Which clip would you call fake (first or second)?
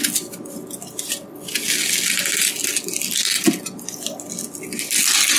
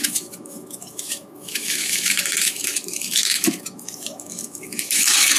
second